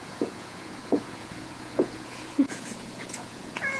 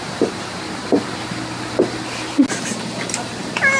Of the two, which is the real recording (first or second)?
second